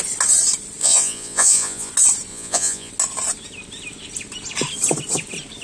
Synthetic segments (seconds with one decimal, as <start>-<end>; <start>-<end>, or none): 0.8-1.9; 2.3-2.9